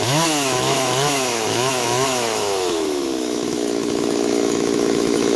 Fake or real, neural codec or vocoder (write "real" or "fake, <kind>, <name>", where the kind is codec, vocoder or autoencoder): fake, autoencoder, DAC-VAE